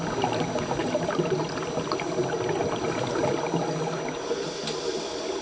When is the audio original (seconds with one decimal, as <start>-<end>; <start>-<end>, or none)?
0.0-0.8; 1.5-5.4